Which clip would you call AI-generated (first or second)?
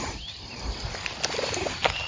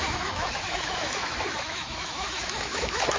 second